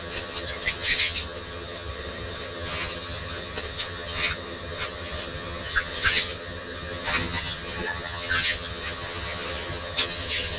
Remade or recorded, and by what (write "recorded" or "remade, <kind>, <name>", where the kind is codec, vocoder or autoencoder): remade, vocoder, HiFi-GAN